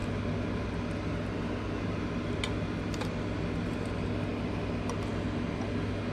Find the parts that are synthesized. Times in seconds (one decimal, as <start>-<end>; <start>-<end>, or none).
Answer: none